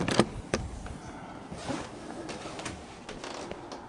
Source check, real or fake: real